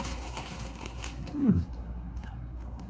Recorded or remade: remade